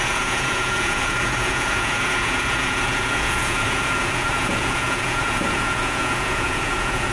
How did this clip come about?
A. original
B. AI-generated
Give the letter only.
B